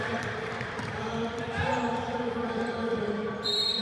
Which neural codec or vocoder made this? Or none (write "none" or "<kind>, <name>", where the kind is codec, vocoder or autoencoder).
vocoder, BigVGAN v2